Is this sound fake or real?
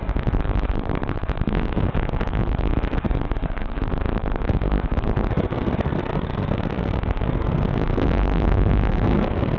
fake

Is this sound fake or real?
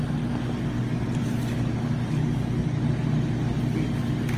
real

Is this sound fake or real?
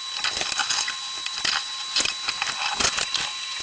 real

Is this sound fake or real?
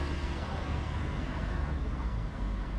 fake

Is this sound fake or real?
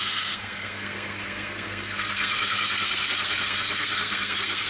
fake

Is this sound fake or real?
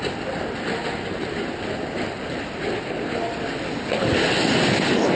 real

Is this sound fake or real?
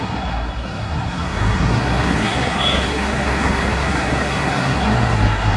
fake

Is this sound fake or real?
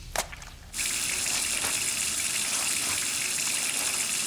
real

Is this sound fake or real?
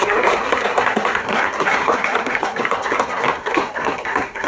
fake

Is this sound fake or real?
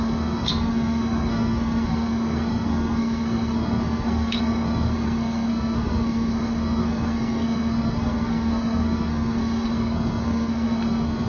fake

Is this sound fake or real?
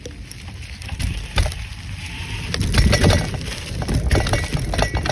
real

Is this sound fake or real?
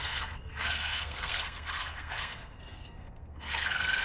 fake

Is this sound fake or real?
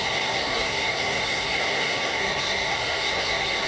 fake